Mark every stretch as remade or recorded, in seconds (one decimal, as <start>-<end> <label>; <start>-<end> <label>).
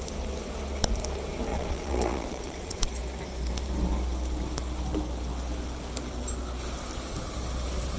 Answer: 0.0-1.5 recorded; 1.5-2.8 remade; 2.8-8.0 recorded